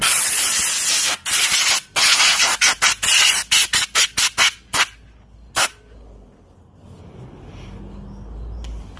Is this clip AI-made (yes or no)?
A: no